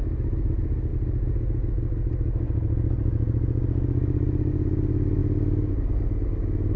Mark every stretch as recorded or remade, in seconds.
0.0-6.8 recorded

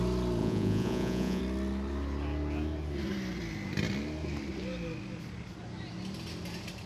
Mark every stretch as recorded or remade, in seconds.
0.0-0.4 recorded; 0.4-1.4 remade; 1.4-6.9 recorded

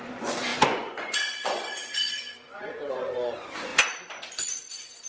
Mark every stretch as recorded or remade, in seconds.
0.0-5.1 remade

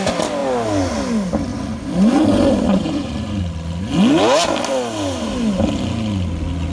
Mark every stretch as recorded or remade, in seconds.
0.0-1.5 recorded; 1.5-3.4 remade; 3.4-6.7 recorded

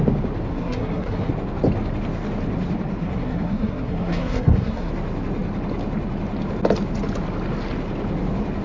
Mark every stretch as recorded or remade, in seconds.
0.0-0.5 recorded; 0.5-1.3 remade; 1.3-3.0 recorded; 3.0-4.9 remade; 4.9-8.6 recorded

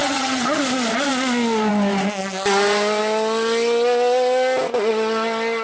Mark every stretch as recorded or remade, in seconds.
0.0-0.6 remade; 0.6-5.6 recorded